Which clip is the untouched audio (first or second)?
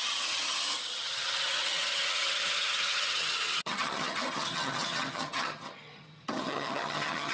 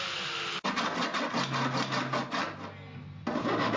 second